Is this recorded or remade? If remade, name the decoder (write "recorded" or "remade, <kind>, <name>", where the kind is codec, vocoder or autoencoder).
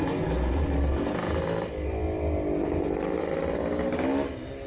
recorded